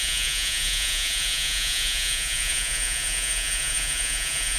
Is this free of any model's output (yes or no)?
no